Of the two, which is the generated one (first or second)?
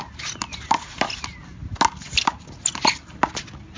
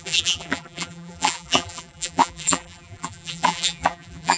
second